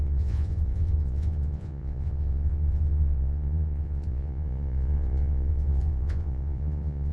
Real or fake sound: fake